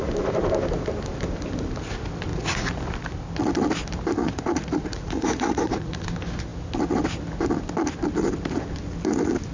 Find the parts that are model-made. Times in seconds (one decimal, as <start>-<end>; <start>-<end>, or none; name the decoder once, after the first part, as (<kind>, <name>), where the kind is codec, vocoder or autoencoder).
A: 2.3-2.8 (vocoder, Vocos); 4.2-6.0